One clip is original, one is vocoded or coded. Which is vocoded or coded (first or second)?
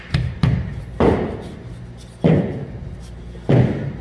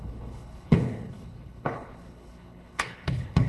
second